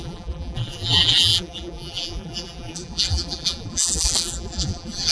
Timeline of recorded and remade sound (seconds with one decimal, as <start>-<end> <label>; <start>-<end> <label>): 0.0-5.1 remade